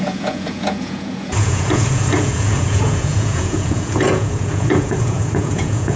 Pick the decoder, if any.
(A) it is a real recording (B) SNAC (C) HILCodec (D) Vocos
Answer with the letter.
D